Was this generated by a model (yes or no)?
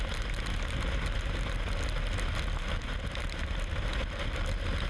no